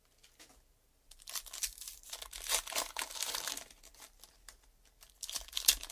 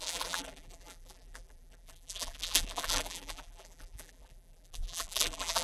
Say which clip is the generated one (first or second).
second